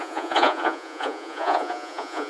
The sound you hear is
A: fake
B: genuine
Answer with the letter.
A